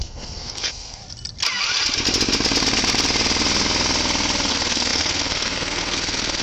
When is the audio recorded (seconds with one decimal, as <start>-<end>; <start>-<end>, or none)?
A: 1.0-4.5